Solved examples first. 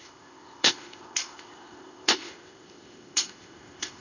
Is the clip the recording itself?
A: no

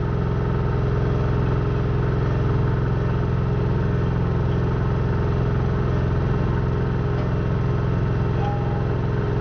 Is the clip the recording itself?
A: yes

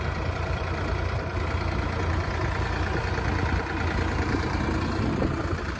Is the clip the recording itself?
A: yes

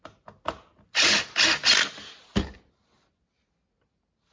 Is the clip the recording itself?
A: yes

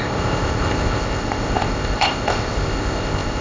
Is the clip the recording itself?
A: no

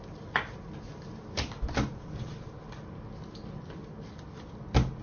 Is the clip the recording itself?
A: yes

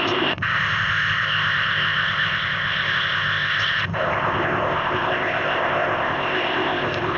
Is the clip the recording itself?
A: no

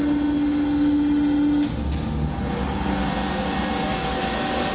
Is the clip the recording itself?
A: yes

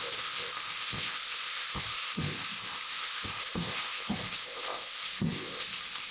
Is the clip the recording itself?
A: no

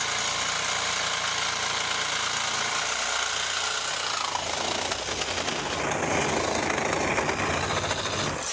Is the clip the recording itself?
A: yes